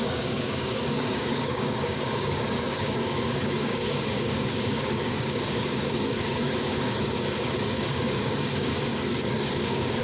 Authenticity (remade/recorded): remade